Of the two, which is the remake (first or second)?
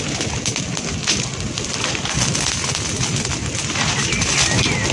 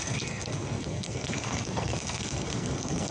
second